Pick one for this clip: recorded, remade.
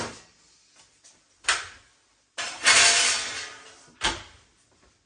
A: remade